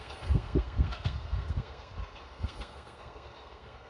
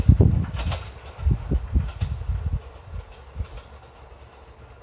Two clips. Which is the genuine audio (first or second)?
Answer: second